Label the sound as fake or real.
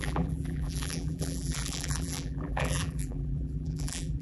fake